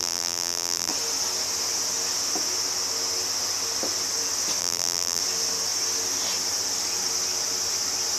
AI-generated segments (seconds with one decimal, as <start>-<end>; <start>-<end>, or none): 0.0-0.9; 4.6-5.2

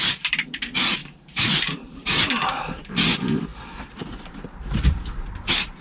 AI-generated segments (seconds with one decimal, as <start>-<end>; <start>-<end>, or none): 0.0-5.8

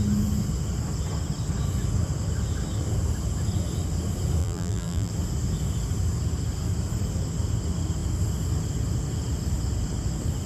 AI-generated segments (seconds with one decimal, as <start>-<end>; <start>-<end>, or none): 4.4-5.1

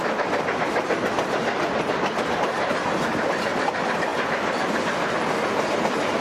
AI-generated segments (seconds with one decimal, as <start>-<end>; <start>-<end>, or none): 0.0-6.2

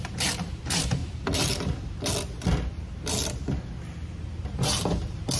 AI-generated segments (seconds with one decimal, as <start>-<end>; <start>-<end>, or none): 0.0-1.0; 4.2-5.4

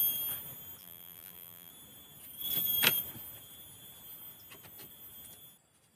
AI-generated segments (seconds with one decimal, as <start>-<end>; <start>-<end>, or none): 0.8-1.7

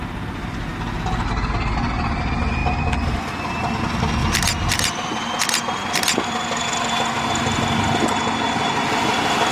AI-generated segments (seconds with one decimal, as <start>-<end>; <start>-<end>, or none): none

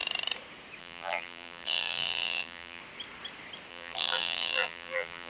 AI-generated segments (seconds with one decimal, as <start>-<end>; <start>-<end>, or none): 0.8-2.8; 3.7-5.3